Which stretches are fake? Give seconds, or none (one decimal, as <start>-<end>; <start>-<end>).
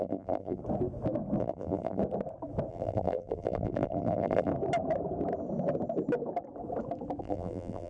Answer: 0.0-0.6; 1.4-2.0; 2.7-4.5; 7.2-7.9